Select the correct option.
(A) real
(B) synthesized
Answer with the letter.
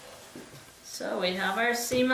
A